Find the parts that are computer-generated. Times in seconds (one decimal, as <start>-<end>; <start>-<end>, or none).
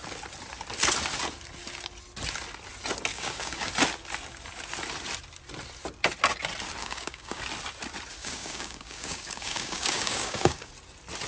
3.1-3.7; 6.8-7.4; 8.2-10.7